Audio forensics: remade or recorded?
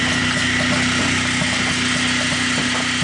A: recorded